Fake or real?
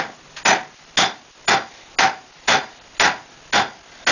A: real